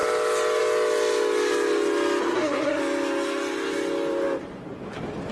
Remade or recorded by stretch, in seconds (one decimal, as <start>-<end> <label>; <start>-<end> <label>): 0.0-2.2 recorded; 2.2-2.8 remade; 2.8-5.3 recorded